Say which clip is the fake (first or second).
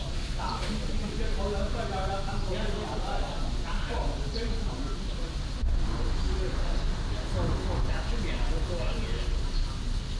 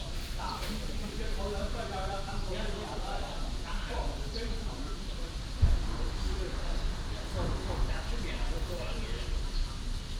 second